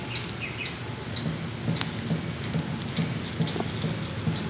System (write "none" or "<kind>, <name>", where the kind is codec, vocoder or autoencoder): none